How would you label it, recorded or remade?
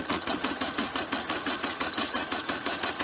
remade